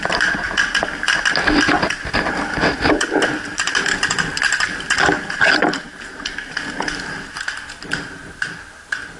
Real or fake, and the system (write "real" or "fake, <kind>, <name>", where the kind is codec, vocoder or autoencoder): real